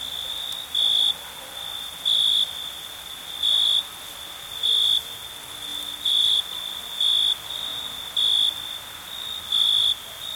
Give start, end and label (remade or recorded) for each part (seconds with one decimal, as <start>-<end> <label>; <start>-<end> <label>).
0.0-5.7 recorded; 5.7-7.1 remade; 7.1-10.4 recorded